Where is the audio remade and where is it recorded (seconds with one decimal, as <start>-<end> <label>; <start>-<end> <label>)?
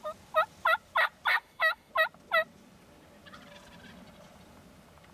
0.0-1.4 recorded; 1.4-1.9 remade; 1.9-5.1 recorded